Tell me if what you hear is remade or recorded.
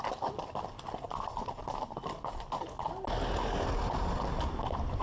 recorded